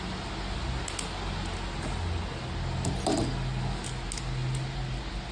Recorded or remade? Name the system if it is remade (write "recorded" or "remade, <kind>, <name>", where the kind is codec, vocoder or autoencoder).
recorded